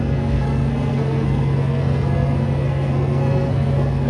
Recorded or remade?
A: remade